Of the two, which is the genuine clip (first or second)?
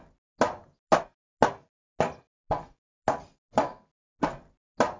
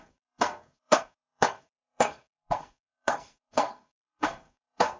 first